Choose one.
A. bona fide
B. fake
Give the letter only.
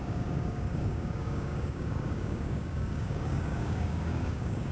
B